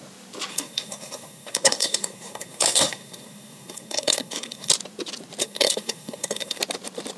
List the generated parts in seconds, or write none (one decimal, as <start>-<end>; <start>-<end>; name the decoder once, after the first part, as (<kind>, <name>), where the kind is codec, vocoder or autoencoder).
0.5-4.7 (codec, SNAC); 5.4-6.6